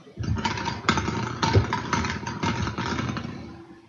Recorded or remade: recorded